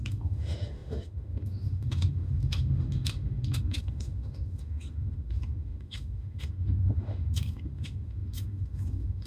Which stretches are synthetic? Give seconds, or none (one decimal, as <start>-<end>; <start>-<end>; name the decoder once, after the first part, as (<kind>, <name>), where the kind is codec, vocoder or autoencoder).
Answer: 0.0-9.3 (autoencoder, DAC-VAE)